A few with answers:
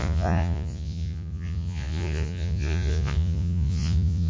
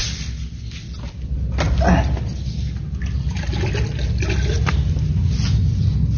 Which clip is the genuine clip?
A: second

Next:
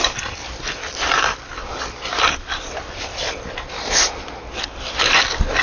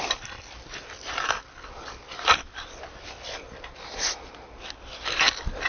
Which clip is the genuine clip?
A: second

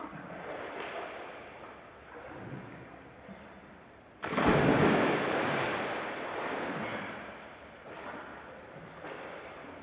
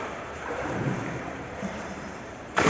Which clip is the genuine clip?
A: first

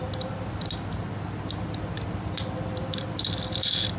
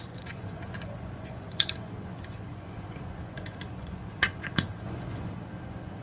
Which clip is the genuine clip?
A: first